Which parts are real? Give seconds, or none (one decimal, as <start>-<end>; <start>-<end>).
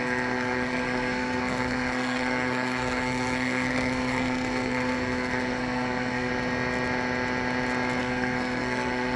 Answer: 6.3-8.0